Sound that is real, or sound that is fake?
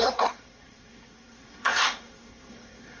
fake